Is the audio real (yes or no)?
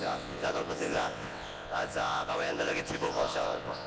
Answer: no